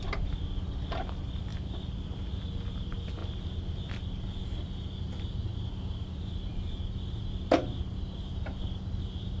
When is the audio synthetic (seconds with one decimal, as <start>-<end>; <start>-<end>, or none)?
none